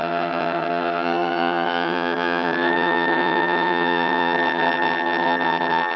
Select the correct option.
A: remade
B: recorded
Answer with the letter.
A